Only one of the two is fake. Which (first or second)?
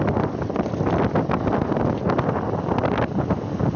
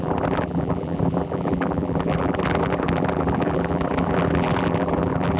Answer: second